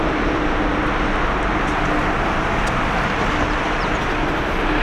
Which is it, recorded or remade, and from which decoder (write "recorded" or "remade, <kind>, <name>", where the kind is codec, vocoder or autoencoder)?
recorded